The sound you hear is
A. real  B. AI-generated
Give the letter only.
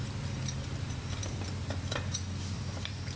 B